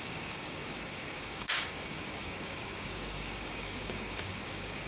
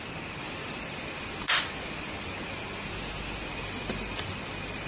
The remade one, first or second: first